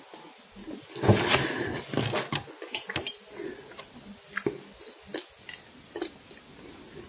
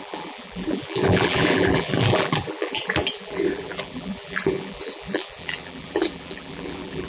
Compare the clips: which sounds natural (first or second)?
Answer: first